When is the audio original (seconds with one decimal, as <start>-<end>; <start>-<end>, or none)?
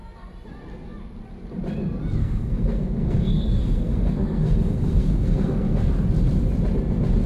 0.0-2.2; 5.9-7.3